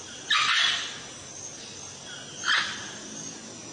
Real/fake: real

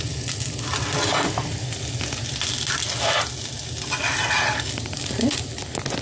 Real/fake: real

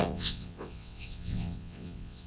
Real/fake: fake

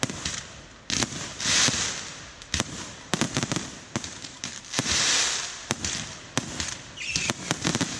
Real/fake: real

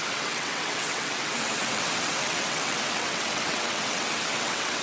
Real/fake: fake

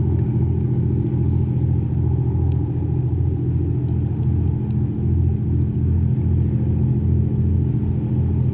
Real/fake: real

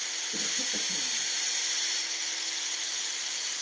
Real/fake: real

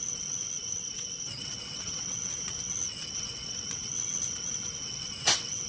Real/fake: fake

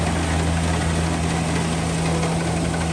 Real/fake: real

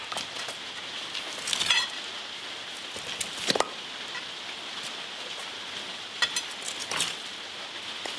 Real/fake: real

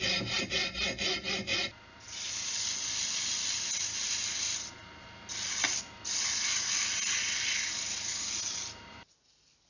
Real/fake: real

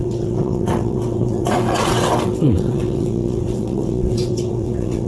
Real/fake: fake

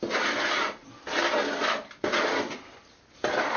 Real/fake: real